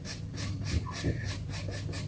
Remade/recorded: recorded